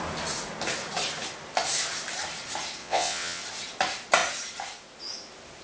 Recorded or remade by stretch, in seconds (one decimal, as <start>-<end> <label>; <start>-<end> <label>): 0.0-2.8 recorded; 2.8-3.4 remade; 3.4-5.6 recorded